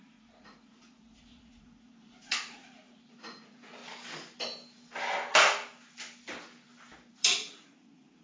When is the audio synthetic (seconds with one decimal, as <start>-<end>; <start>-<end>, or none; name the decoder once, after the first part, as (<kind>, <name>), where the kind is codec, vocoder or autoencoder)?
0.0-3.8 (vocoder, Vocos); 7.1-8.2